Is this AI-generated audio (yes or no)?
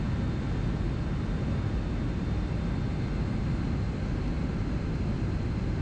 no